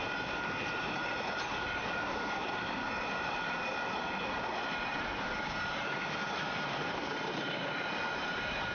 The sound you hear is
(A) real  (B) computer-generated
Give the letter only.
B